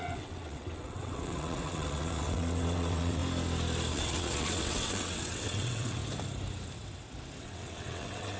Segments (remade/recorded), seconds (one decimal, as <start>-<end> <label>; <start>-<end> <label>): 0.0-3.2 remade; 3.2-3.9 recorded; 3.9-6.0 remade; 6.0-7.4 recorded; 7.4-8.4 remade